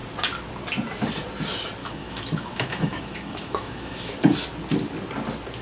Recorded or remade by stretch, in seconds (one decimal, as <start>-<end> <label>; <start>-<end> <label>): 0.0-1.8 recorded; 1.8-4.1 remade; 4.1-5.6 recorded